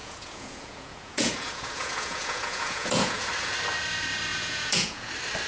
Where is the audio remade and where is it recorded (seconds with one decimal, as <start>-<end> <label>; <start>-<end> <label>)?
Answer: 0.0-3.3 remade; 3.3-4.3 recorded; 4.3-5.1 remade; 5.1-5.5 recorded